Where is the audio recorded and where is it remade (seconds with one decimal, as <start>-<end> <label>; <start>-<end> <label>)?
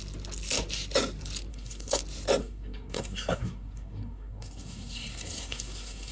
0.0-1.5 recorded; 1.5-2.0 remade; 2.0-2.4 recorded; 2.4-6.1 remade